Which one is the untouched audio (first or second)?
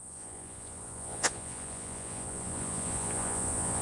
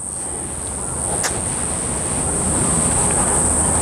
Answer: second